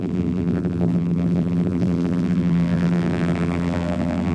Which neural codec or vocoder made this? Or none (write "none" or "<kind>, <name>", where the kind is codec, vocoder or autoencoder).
vocoder, BigVGAN v2